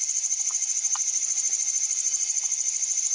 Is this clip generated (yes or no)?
no